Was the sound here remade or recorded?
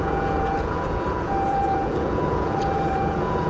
remade